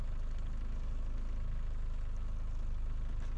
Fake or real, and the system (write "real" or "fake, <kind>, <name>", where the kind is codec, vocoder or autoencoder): real